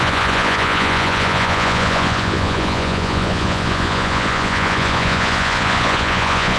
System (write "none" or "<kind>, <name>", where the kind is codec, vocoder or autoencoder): vocoder, Vocos